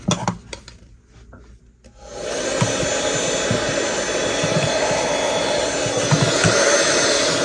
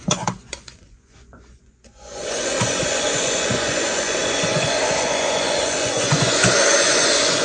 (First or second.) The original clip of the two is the first